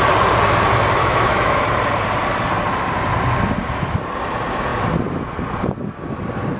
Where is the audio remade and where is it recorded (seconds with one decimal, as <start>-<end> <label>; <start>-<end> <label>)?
0.0-1.0 recorded; 1.0-1.6 remade; 1.6-6.6 recorded